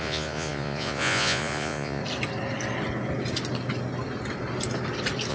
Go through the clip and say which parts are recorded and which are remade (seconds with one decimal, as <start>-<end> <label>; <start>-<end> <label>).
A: 0.0-2.0 remade; 2.0-5.3 recorded

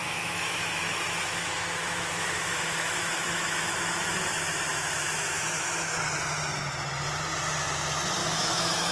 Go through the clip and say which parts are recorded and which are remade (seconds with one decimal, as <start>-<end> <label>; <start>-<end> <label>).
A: 0.0-4.1 remade; 4.1-4.7 recorded; 4.7-6.0 remade; 6.0-8.2 recorded; 8.2-8.9 remade

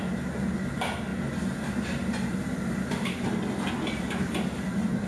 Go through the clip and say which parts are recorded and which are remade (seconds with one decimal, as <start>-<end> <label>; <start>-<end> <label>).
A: 0.0-5.1 recorded